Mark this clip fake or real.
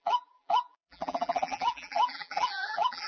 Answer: fake